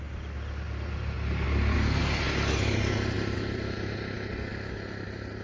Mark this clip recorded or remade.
recorded